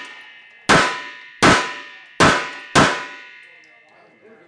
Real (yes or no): yes